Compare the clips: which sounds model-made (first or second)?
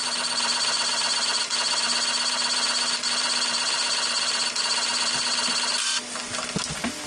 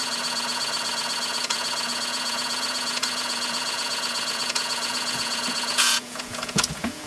second